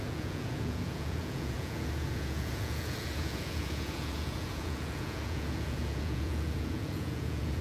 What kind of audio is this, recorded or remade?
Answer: remade